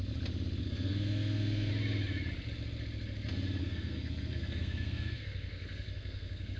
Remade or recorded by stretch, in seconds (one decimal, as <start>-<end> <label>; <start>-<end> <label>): 0.0-0.6 recorded; 0.6-1.7 remade; 1.7-3.6 recorded; 3.6-6.6 remade